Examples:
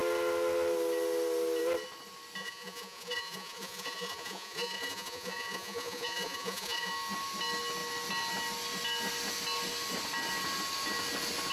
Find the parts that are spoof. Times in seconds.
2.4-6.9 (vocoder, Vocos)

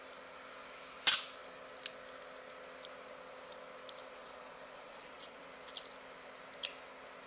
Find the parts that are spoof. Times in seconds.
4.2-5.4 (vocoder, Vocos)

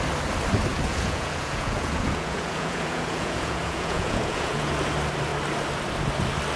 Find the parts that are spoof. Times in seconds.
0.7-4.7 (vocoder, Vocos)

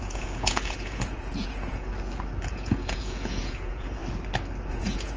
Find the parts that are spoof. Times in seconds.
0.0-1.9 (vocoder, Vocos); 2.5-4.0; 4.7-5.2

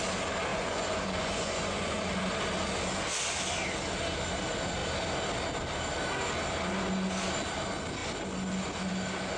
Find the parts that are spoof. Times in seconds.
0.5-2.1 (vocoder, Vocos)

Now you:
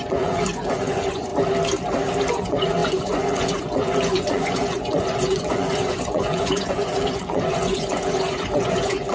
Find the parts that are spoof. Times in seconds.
0.0-1.3 (vocoder, Vocos); 2.3-9.1